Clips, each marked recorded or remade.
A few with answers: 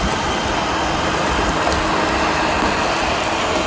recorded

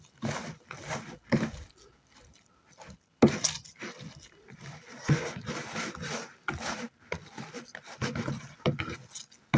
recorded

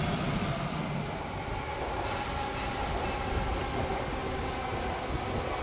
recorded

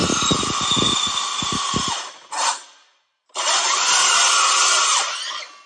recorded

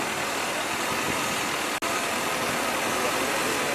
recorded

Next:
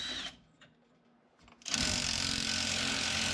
recorded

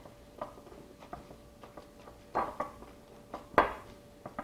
recorded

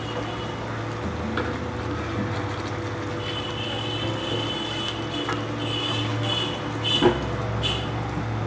recorded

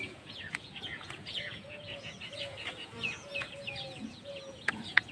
remade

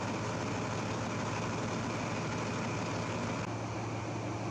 recorded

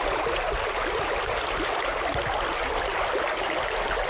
recorded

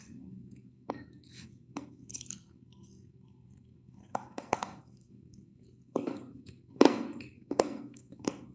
remade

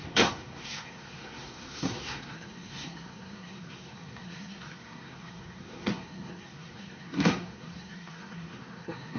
remade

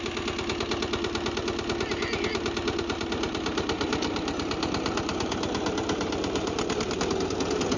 recorded